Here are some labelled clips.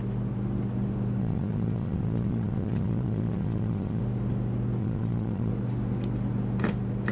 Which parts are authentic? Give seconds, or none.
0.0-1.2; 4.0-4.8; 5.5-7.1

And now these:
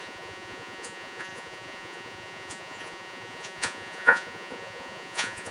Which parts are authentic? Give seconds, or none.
none

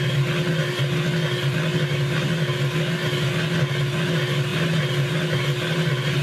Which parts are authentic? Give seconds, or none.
0.0-6.2

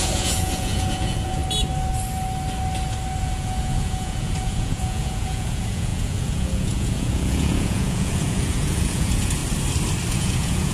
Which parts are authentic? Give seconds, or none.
1.4-3.2; 9.4-10.1

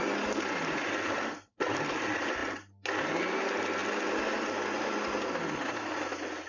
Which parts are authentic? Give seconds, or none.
0.0-6.5

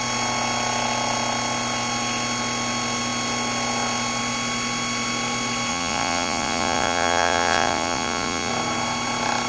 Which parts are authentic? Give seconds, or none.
0.0-5.7; 8.5-9.5

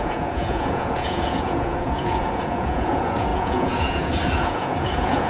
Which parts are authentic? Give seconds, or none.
none